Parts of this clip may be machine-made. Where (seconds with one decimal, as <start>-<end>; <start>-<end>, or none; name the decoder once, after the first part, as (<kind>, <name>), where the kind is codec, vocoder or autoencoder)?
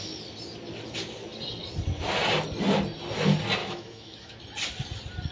3.6-4.4 (autoencoder, DAC-VAE)